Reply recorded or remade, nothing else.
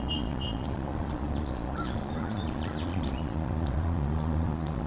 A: remade